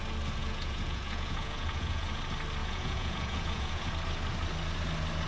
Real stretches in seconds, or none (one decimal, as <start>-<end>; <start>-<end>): 0.0-0.4; 2.2-2.6; 3.9-5.3